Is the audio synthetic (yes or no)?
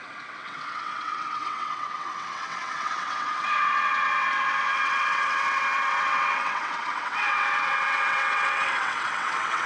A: yes